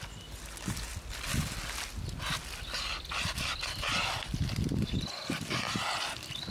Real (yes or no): yes